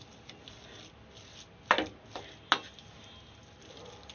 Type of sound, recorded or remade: recorded